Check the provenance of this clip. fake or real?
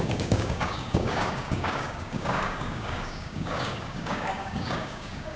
fake